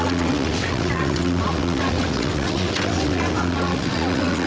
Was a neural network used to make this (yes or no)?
yes